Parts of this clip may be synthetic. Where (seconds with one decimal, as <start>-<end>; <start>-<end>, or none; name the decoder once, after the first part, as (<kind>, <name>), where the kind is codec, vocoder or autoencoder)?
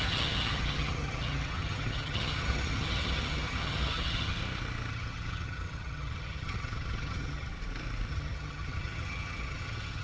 0.0-4.4 (vocoder, HiFi-GAN); 4.9-7.5; 8.1-10.0